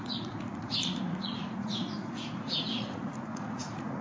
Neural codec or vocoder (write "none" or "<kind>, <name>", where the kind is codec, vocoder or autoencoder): vocoder, Vocos